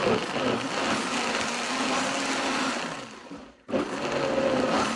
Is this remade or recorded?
recorded